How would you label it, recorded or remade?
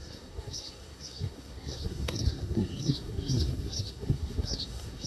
remade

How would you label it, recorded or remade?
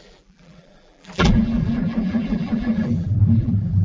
remade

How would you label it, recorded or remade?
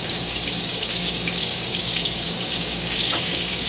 remade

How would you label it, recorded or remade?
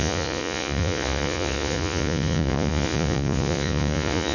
remade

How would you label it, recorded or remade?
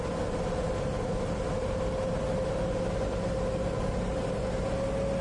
recorded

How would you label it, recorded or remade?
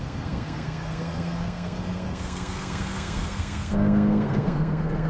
remade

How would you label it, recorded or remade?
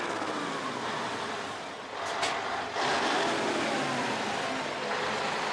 recorded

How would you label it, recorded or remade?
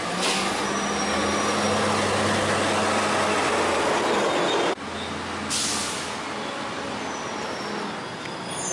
recorded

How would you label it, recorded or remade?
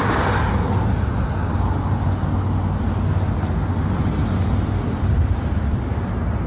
recorded